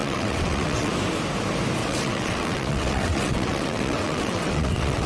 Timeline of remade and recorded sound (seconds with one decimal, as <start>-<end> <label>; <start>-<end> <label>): 0.0-0.9 remade; 0.9-1.8 recorded; 1.8-5.1 remade